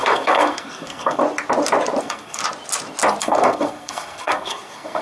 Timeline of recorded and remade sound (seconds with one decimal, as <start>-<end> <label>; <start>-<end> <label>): 0.0-1.2 remade; 1.2-2.0 recorded; 2.0-2.4 remade; 2.4-3.2 recorded; 3.2-5.0 remade